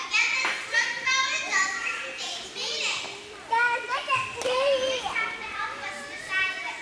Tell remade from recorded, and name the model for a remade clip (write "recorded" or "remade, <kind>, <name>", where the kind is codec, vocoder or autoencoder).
recorded